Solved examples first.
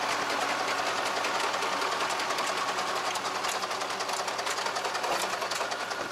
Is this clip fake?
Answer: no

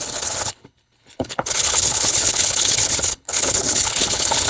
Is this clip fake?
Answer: yes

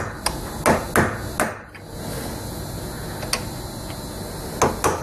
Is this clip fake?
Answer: no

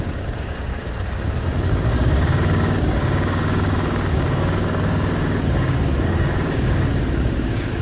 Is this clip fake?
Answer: yes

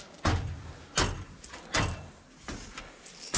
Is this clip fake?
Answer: no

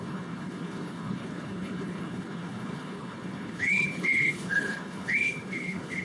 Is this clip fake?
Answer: yes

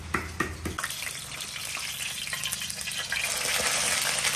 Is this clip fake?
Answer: no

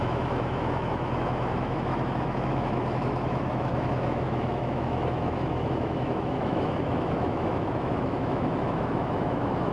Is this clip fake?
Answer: yes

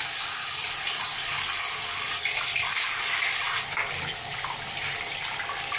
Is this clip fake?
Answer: no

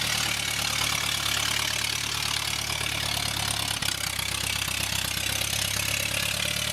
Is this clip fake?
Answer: no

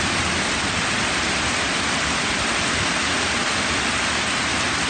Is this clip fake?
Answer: no